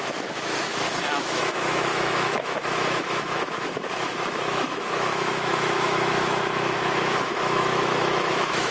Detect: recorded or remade remade